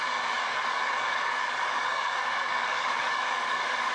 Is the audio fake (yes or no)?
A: yes